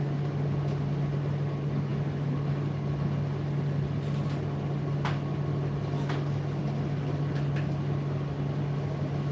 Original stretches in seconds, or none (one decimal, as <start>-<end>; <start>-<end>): 0.0-9.3